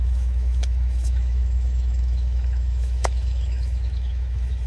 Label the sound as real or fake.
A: fake